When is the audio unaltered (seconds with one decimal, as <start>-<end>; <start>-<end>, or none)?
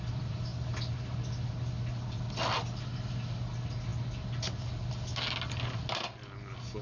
0.0-6.8